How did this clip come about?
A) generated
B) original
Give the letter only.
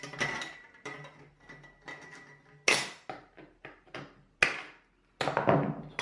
B